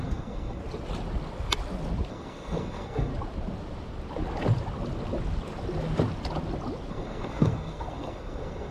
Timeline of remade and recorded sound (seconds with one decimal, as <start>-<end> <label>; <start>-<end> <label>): 0.0-0.6 remade; 0.6-2.1 recorded; 2.1-3.1 remade; 3.1-6.9 recorded; 6.9-8.7 remade